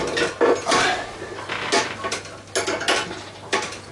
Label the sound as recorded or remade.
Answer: recorded